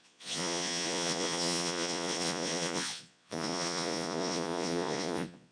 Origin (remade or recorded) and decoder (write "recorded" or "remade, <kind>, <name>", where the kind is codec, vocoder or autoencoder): remade, vocoder, Vocos